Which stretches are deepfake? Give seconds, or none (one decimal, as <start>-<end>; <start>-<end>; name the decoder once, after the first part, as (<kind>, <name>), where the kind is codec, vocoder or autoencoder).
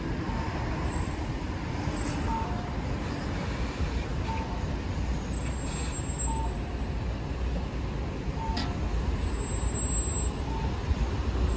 none